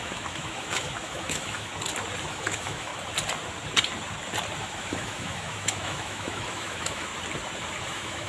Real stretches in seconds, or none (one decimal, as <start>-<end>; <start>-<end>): 1.7-2.3; 2.9-4.6; 7.1-7.8